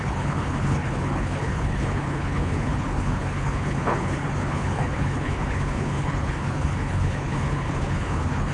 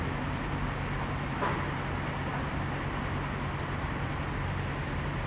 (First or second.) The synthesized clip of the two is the first